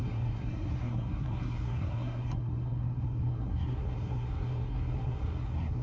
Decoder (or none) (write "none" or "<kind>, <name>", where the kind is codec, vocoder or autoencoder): codec, SNAC